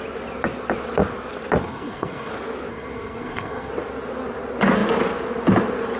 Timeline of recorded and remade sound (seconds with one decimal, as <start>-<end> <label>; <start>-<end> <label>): 0.0-1.6 recorded; 1.6-2.3 remade; 2.3-2.7 recorded; 2.7-3.7 remade; 3.7-6.0 recorded